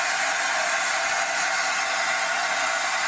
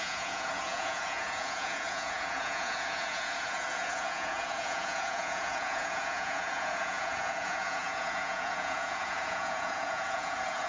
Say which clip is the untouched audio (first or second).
first